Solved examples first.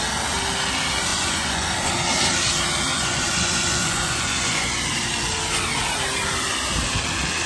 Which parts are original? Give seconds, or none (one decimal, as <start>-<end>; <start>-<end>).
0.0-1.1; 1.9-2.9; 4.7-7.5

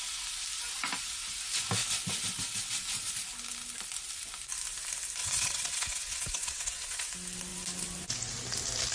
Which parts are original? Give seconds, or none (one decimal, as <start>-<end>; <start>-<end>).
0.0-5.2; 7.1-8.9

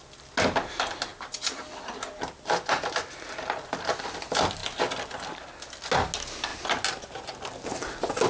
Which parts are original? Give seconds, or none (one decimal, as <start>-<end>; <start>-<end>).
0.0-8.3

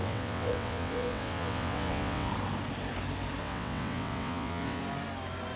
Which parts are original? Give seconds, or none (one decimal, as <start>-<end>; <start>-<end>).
2.3-3.4; 4.8-5.6